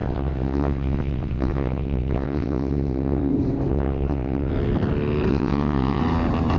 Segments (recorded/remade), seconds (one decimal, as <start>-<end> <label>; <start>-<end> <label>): 0.0-3.3 remade; 3.3-3.7 recorded; 3.7-4.5 remade; 4.5-5.3 recorded; 5.3-6.0 remade; 6.0-6.6 recorded